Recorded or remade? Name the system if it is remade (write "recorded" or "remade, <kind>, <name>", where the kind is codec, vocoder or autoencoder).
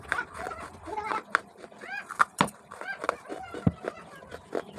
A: recorded